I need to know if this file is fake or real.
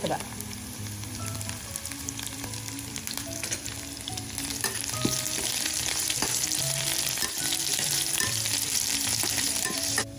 fake